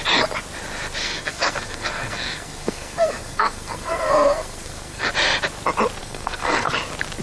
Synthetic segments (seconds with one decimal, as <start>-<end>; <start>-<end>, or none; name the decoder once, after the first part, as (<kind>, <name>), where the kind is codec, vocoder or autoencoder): 1.0-5.1 (codec, SNAC); 6.0-6.7